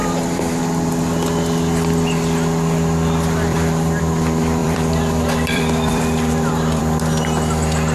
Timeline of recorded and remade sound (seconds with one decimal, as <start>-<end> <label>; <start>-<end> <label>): 0.0-0.6 remade; 0.6-3.5 recorded; 3.5-4.0 remade; 4.0-4.6 recorded; 4.6-6.8 remade; 6.8-7.9 recorded